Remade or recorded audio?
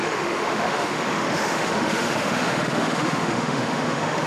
remade